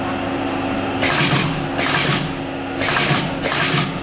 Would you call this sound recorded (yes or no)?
yes